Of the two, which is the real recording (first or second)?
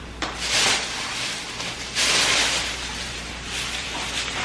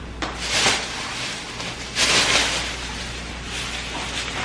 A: second